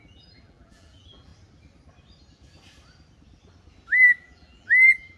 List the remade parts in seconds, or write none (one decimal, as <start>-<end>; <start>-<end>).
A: 0.0-1.3; 4.2-5.2